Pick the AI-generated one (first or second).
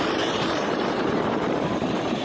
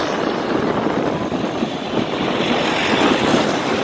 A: first